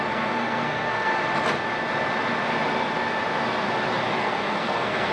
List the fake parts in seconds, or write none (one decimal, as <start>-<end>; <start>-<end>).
0.0-1.1; 4.2-5.1